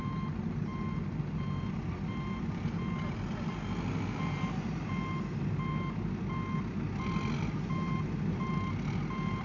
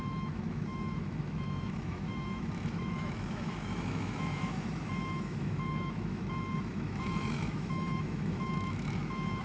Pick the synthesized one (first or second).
second